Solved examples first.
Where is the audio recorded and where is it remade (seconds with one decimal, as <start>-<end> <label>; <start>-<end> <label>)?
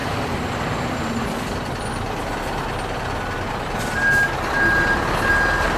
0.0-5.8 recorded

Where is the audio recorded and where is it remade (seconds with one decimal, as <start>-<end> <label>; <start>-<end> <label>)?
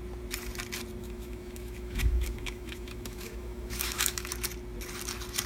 0.0-1.0 recorded; 1.0-4.3 remade; 4.3-5.5 recorded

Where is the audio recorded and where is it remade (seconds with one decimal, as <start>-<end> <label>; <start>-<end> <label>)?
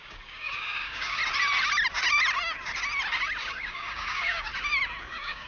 0.0-1.2 remade; 1.2-3.4 recorded; 3.4-4.5 remade; 4.5-5.0 recorded; 5.0-5.5 remade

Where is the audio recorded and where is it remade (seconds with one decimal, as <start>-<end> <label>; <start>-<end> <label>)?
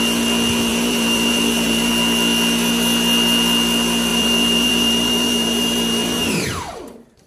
0.0-0.7 recorded; 0.7-1.9 remade; 1.9-4.1 recorded; 4.1-7.3 remade